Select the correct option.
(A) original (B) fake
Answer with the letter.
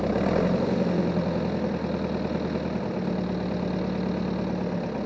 A